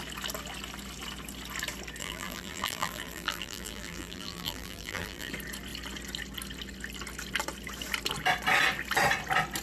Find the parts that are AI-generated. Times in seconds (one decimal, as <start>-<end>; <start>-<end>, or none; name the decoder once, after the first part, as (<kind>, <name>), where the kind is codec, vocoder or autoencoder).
2.0-5.3 (vocoder, BigVGAN v2)